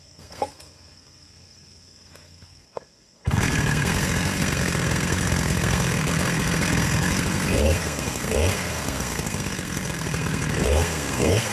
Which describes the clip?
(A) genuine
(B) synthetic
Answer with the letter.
B